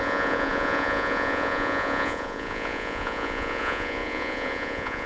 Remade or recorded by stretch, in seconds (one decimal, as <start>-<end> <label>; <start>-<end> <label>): 0.0-5.1 remade